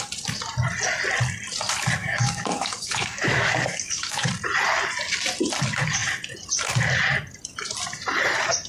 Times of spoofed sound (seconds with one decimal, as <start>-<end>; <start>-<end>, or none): 2.0-4.3

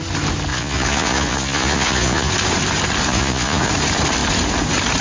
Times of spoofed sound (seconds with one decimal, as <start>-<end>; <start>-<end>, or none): 0.5-2.3; 3.1-3.7

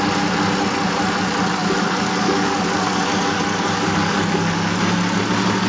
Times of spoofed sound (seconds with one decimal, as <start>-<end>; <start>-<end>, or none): 1.6-4.8

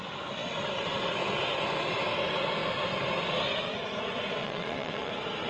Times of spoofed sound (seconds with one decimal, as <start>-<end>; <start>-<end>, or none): 4.4-5.1

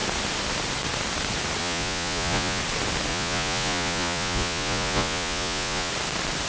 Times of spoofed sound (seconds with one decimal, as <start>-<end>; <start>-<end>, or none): 1.6-2.6; 3.1-5.9

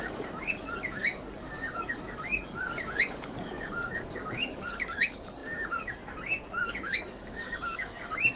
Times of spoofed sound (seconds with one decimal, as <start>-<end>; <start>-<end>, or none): 0.0-8.4

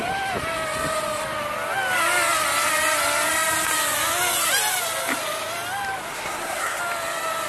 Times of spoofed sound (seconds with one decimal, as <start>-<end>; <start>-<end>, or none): 6.1-6.8